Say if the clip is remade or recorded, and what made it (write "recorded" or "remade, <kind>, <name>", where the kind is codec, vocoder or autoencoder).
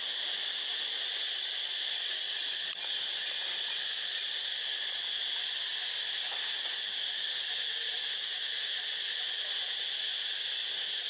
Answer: recorded